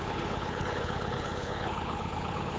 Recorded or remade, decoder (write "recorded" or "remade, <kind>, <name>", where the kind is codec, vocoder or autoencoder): remade, codec, HILCodec